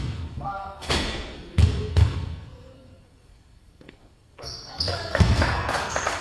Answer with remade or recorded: remade